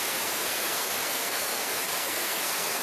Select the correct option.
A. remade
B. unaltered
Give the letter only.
A